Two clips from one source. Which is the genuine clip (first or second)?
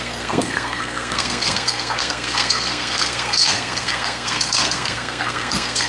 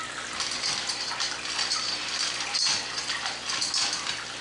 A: second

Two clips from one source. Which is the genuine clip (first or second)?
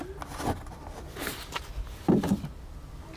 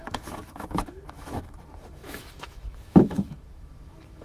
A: first